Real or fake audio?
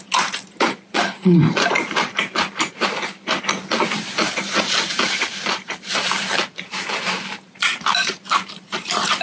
fake